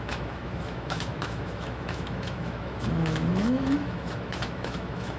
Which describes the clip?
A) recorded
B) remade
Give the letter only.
B